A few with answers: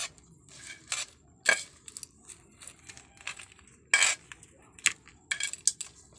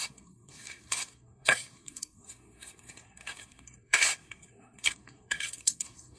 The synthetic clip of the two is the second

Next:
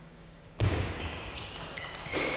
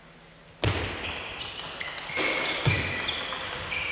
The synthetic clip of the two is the first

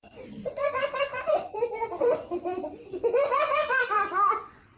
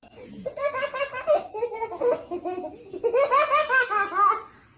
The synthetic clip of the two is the first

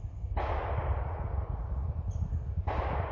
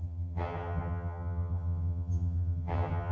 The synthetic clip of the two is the second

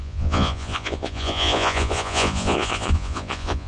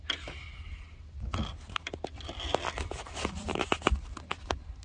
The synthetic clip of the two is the first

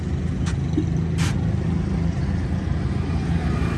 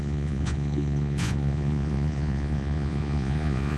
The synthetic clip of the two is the second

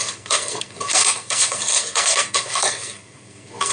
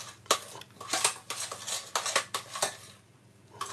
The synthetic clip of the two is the first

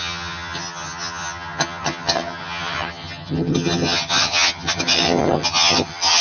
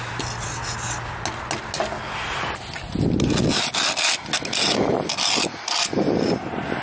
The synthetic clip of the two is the first